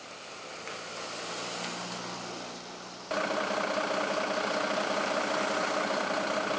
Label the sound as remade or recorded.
recorded